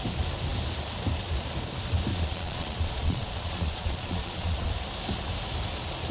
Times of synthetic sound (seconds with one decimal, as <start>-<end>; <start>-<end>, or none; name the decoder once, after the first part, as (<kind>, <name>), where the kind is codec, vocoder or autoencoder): 2.1-4.7 (vocoder, Vocos)